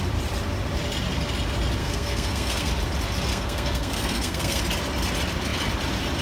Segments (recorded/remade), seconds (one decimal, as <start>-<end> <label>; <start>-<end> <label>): 0.0-1.8 recorded; 1.8-2.7 remade; 2.7-3.3 recorded; 3.3-4.6 remade; 4.6-6.2 recorded